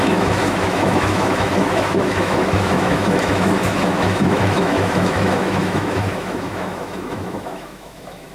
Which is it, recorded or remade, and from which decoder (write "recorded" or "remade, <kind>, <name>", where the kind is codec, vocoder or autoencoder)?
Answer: remade, autoencoder, DAC-VAE